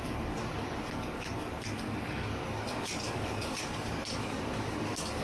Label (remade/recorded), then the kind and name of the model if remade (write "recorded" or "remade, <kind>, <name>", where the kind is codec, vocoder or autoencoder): remade, codec, DAC